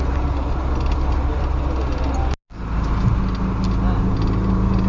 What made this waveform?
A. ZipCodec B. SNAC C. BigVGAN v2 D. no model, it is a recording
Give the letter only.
D